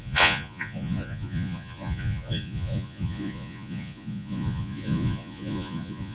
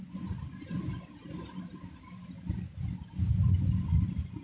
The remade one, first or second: first